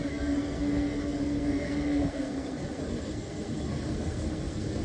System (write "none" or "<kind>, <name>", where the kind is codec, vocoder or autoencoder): codec, SNAC